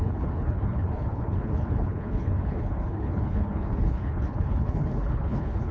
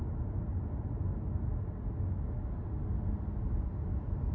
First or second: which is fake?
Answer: first